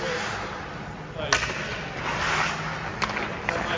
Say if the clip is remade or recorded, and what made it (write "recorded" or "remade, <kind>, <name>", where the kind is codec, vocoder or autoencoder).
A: recorded